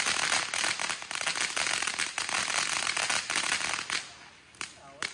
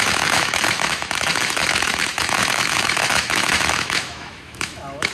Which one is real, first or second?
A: first